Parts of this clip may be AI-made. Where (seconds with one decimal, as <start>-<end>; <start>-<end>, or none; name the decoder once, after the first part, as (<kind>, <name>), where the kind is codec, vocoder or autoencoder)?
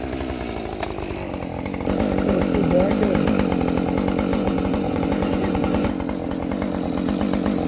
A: 4.3-5.9 (vocoder, Vocos)